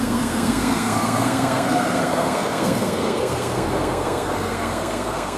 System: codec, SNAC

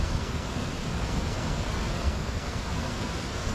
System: codec, SNAC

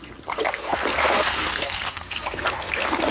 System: codec, SNAC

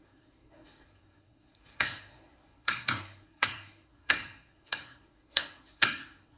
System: codec, SNAC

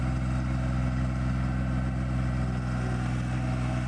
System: none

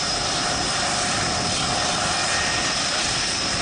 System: none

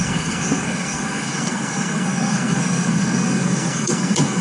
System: codec, SNAC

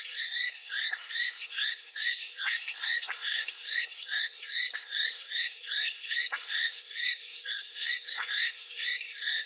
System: codec, SNAC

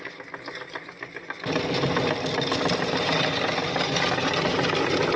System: none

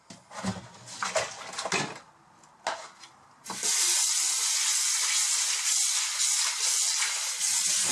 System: none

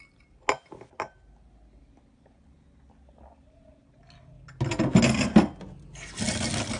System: none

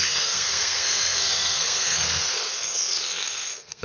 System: codec, SNAC